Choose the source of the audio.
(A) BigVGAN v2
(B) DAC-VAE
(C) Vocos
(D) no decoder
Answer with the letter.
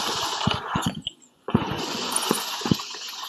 C